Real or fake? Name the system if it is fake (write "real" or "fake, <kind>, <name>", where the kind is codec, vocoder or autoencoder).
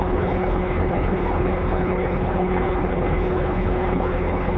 fake, codec, HILCodec